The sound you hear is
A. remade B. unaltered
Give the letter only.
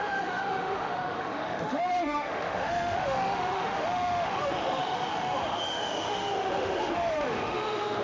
A